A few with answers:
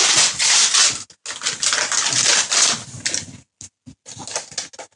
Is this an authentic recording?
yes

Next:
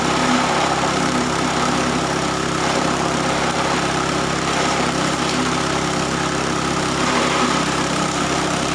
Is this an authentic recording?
no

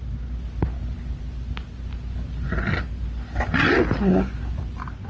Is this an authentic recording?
yes